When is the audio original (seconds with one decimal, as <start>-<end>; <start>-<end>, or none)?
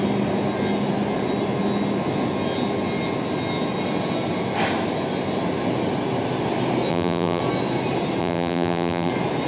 0.0-6.9; 7.4-8.2; 9.1-9.5